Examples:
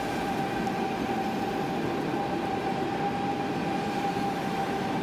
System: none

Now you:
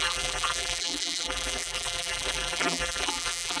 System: vocoder, BigVGAN v2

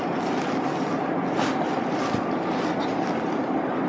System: none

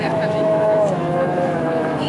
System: autoencoder, DAC-VAE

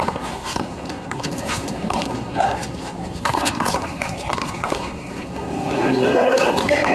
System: codec, SNAC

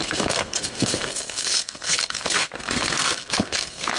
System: codec, SNAC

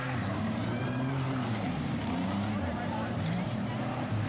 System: vocoder, BigVGAN v2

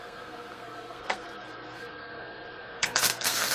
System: codec, SNAC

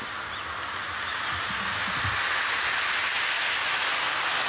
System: none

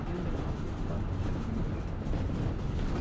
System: none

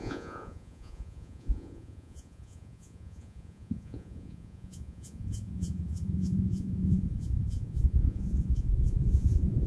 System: vocoder, Vocos